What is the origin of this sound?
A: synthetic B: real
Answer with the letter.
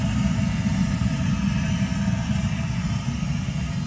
B